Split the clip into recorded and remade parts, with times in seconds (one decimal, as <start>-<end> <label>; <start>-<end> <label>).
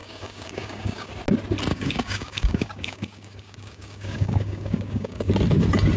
0.0-1.1 remade; 1.1-1.7 recorded; 1.7-5.3 remade; 5.3-6.0 recorded